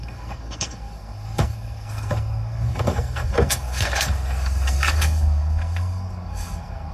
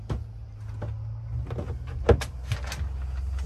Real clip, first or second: second